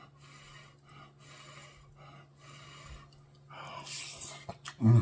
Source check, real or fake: real